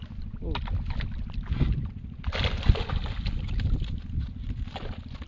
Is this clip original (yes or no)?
yes